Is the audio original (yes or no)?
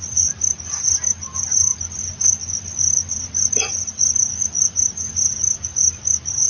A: yes